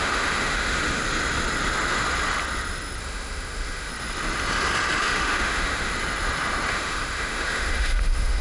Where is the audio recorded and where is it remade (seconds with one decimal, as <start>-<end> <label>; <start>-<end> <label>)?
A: 0.0-1.0 remade; 1.0-3.0 recorded; 3.0-3.9 remade; 3.9-5.0 recorded; 5.0-5.9 remade; 5.9-6.7 recorded; 6.7-8.4 remade